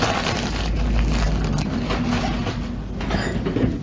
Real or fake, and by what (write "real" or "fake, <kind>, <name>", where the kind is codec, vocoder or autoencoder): real